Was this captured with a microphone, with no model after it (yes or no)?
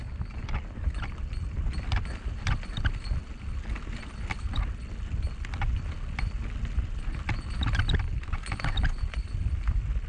yes